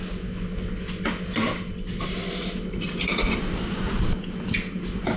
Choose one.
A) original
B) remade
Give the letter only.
A